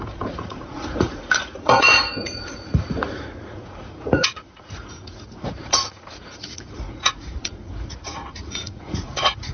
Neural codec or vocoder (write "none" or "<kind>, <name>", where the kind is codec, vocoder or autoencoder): vocoder, Vocos